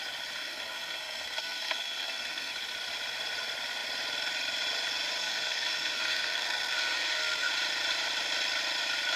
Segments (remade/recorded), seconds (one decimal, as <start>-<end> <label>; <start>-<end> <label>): 0.0-0.4 recorded; 0.4-2.5 remade; 2.5-5.2 recorded; 5.2-7.5 remade; 7.5-9.2 recorded